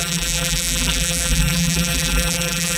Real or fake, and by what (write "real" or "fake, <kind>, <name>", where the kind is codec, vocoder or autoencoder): fake, vocoder, BigVGAN v2